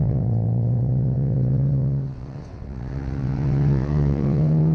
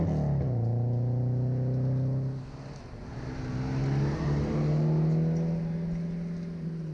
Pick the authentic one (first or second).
second